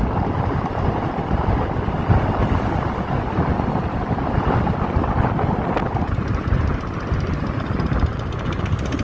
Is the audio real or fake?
real